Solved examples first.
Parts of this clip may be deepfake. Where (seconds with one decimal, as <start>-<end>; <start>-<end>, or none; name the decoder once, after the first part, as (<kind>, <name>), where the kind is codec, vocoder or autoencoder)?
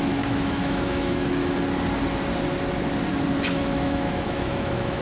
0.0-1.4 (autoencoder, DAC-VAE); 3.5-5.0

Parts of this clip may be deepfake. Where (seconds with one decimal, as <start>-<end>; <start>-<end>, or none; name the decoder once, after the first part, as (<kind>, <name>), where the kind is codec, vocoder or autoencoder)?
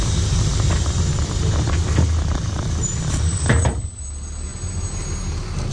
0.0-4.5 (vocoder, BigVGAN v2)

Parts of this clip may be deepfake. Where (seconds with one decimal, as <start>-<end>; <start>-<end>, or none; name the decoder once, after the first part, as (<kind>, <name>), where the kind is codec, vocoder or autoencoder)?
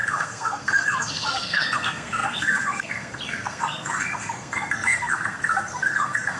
0.0-6.4 (codec, SNAC)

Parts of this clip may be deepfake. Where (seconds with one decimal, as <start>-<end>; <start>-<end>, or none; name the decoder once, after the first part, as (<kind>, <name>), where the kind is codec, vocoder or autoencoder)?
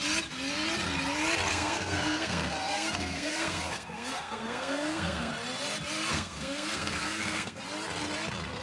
1.5-5.3 (codec, SNAC); 6.1-7.6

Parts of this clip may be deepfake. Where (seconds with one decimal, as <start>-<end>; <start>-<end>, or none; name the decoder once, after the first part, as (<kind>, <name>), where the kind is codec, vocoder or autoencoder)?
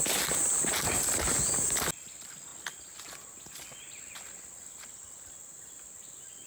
none